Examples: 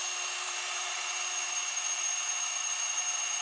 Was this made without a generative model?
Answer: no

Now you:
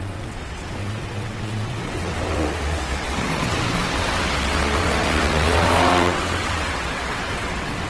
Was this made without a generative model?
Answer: no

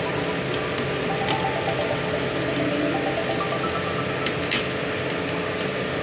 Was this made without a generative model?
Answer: yes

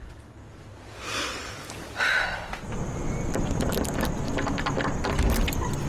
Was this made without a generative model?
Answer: yes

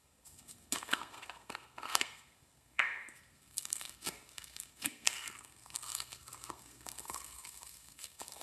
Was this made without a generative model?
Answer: no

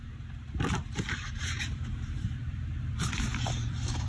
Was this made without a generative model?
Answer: no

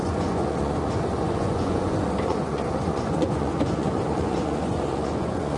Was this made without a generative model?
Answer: no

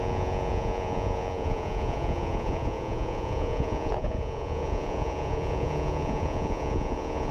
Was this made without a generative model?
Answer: no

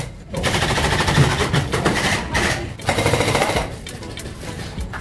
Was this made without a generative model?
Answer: yes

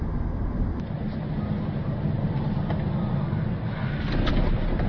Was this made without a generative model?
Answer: yes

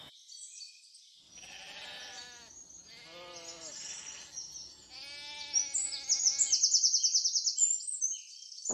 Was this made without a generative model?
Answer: yes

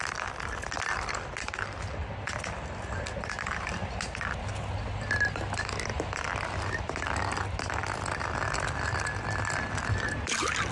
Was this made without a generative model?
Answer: yes